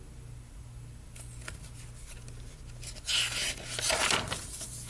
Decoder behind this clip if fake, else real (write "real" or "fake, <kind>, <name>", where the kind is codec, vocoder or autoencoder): real